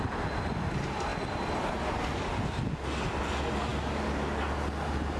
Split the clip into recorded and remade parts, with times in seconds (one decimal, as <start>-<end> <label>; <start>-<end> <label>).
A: 0.0-5.2 recorded